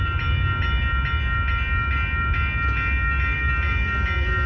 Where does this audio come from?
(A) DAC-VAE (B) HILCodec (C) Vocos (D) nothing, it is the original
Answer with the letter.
D